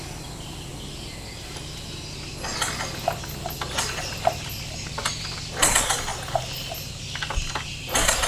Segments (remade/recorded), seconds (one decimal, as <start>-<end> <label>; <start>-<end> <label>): 0.0-5.0 recorded; 5.0-5.5 remade; 5.5-8.3 recorded

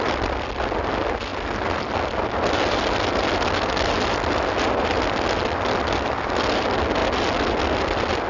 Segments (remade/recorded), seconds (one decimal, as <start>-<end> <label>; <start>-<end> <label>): 0.0-8.3 recorded

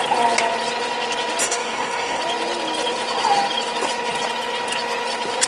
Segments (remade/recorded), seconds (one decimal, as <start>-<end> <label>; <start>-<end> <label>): 0.0-1.4 recorded; 1.4-2.2 remade; 2.2-5.5 recorded

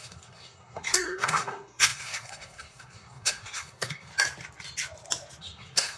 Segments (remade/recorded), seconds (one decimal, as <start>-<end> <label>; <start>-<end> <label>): 0.0-4.1 remade; 4.1-5.4 recorded; 5.4-6.0 remade

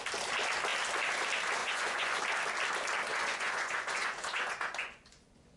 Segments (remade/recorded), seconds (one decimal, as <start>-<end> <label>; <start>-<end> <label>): 0.0-1.6 recorded; 1.6-2.2 remade; 2.2-3.1 recorded; 3.1-5.6 remade

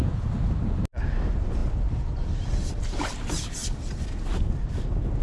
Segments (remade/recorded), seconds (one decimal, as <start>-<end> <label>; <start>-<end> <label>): 0.0-5.2 recorded

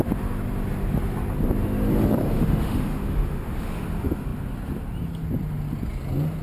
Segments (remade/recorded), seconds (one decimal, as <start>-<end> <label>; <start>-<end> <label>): 0.0-2.2 recorded; 2.2-3.7 remade; 3.7-6.4 recorded

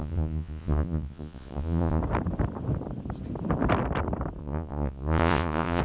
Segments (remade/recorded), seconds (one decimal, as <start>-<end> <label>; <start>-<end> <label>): 0.0-2.0 remade; 2.0-4.4 recorded; 4.4-5.8 remade